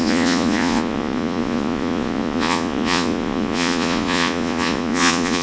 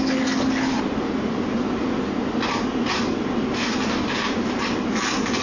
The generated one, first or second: first